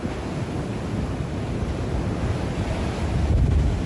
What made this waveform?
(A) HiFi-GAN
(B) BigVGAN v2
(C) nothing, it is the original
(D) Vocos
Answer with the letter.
C